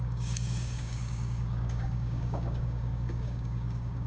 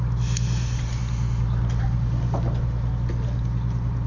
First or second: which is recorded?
second